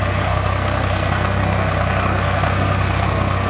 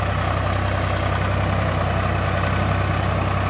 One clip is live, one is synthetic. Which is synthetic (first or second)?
first